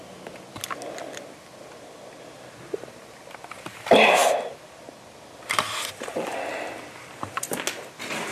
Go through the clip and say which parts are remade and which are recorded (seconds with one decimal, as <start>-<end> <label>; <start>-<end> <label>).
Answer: 0.0-8.3 recorded